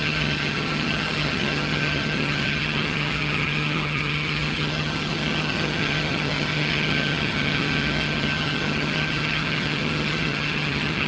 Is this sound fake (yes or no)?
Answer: yes